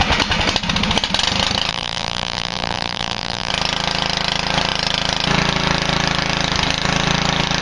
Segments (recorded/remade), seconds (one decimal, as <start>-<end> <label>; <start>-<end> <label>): 0.0-1.7 recorded; 1.7-3.5 remade; 3.5-7.6 recorded